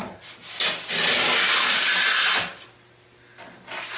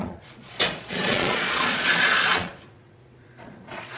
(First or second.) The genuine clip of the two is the first